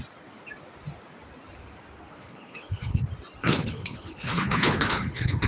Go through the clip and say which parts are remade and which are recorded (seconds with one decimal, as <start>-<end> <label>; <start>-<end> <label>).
0.0-2.1 recorded; 2.1-3.0 remade; 3.0-3.4 recorded; 3.4-5.5 remade